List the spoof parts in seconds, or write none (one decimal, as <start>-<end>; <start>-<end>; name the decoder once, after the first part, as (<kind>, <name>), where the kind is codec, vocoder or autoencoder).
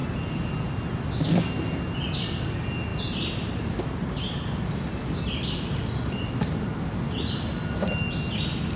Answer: none